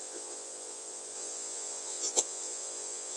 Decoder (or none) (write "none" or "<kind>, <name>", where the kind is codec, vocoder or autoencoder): vocoder, Vocos